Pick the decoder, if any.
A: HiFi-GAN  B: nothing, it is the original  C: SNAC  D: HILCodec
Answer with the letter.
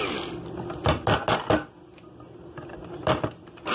B